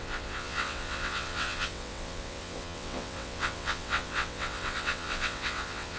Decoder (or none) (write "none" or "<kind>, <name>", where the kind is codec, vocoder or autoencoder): vocoder, WaveNeXt